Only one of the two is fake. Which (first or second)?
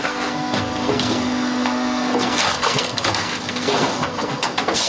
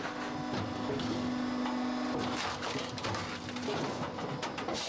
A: first